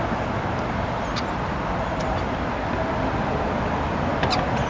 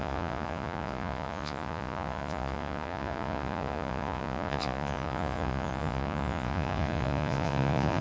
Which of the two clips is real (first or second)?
first